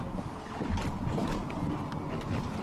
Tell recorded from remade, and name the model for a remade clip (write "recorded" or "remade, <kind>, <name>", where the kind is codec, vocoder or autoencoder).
recorded